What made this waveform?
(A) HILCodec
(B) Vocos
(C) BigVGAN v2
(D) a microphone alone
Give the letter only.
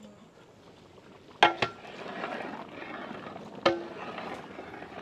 D